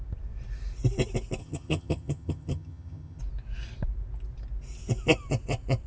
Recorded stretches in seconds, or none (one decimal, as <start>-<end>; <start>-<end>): 0.0-1.4; 3.2-5.9